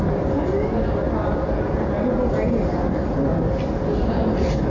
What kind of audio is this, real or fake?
real